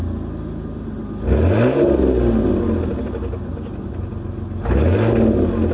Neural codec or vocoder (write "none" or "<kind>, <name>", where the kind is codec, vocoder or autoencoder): none